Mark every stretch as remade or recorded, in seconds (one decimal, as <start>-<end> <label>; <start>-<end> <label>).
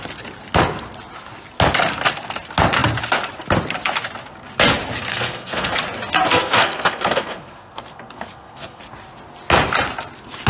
0.0-5.1 recorded; 5.1-5.7 remade; 5.7-6.3 recorded; 6.3-8.8 remade; 8.8-10.5 recorded